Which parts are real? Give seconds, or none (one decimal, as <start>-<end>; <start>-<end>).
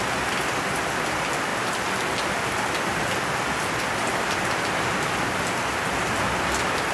0.0-6.9